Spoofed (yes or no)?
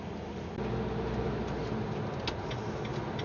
no